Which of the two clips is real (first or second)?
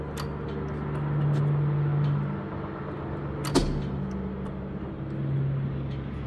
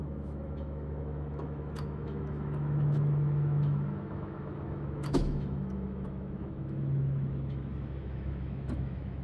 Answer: first